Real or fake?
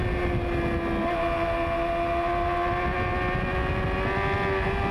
real